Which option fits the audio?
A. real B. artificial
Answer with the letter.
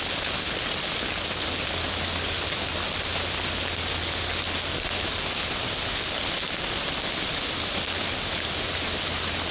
A